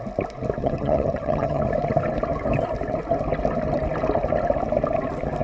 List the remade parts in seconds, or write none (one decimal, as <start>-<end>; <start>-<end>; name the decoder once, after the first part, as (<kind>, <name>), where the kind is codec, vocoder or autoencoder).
0.6-1.6 (vocoder, HiFi-GAN)